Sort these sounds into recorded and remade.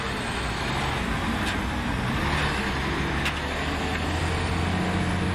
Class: recorded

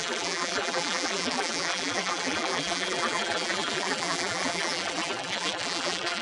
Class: remade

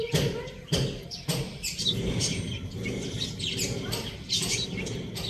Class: remade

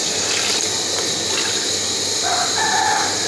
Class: recorded